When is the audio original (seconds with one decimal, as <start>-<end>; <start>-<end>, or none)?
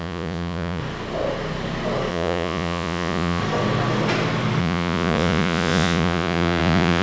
0.8-2.1; 3.4-4.6